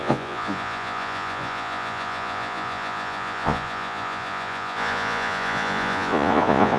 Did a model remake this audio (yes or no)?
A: yes